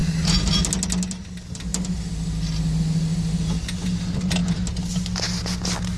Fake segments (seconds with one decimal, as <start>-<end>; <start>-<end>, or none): none